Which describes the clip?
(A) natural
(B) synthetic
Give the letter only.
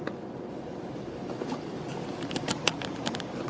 B